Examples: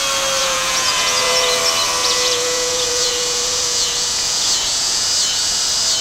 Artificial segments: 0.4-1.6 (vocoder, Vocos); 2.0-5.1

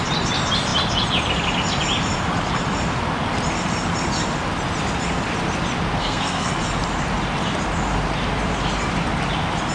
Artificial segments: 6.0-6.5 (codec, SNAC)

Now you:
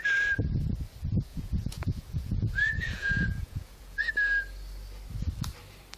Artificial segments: 1.3-4.1 (vocoder, Vocos)

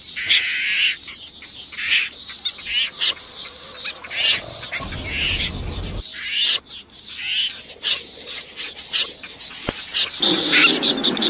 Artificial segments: none

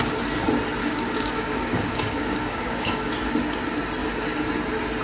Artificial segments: 0.8-3.1 (codec, DAC); 4.0-4.5

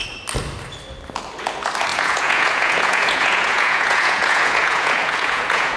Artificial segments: 1.9-5.8 (vocoder, Vocos)

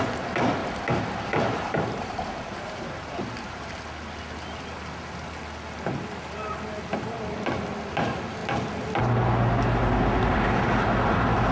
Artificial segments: 0.6-3.8 (vocoder, BigVGAN v2)

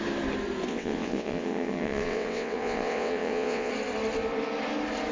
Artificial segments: 0.7-3.7 (vocoder, WaveNeXt)